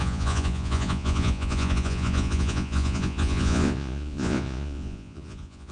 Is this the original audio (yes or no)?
no